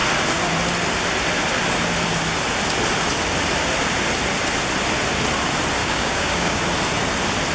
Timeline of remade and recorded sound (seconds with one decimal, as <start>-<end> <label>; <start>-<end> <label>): 0.0-5.8 recorded; 5.8-6.6 remade; 6.6-7.5 recorded